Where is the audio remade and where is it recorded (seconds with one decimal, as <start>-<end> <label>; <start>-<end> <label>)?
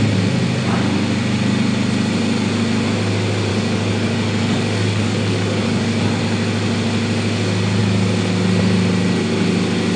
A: 0.0-3.5 recorded; 3.5-6.2 remade; 6.2-10.0 recorded